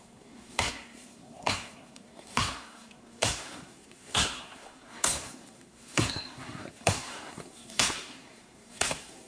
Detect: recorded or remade remade